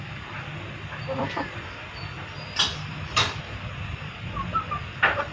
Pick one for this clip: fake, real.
real